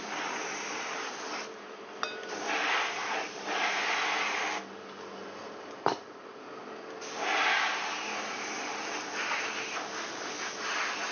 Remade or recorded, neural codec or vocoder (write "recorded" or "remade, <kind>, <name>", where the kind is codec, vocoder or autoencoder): recorded